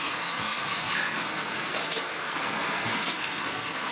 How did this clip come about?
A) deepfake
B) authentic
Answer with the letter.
A